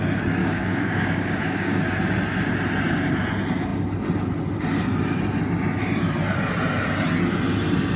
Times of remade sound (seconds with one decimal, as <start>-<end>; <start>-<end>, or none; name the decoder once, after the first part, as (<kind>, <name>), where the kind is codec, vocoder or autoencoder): 0.4-1.9 (codec, DAC)